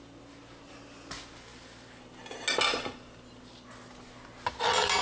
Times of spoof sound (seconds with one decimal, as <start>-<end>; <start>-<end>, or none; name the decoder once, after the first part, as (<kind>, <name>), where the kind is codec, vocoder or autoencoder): none

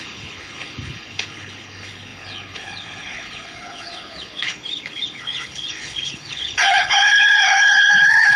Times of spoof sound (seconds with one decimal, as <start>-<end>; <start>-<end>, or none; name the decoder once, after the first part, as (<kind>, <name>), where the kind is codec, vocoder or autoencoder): 0.0-8.4 (codec, HILCodec)

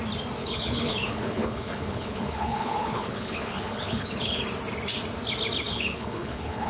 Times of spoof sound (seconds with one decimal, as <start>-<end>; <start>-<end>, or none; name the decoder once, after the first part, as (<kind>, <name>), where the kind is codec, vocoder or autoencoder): 0.4-4.4 (codec, HILCodec); 5.7-6.7